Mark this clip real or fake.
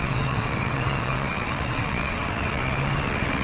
fake